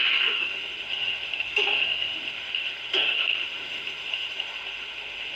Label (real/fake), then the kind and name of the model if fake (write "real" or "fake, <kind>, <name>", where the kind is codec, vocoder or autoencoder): fake, autoencoder, DAC-VAE